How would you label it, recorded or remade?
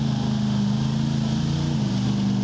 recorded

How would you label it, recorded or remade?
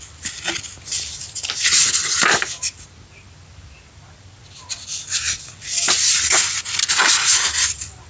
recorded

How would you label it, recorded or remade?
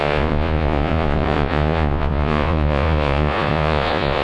remade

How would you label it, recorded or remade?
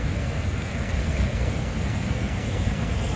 remade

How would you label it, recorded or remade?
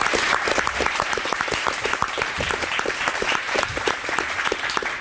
remade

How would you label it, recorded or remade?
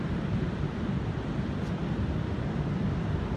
recorded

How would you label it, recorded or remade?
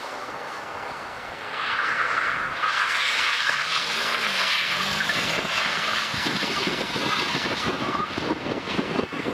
remade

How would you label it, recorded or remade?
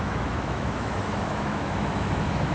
remade